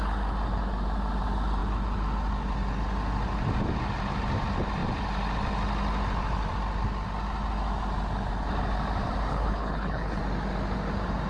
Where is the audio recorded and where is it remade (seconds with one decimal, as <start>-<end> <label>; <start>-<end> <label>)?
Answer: 0.0-9.3 recorded; 9.3-10.2 remade; 10.2-11.3 recorded